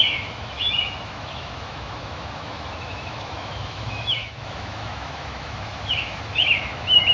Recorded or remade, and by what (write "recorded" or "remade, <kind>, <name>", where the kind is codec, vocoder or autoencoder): remade, autoencoder, DAC-VAE